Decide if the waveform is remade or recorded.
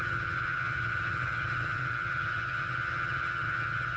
remade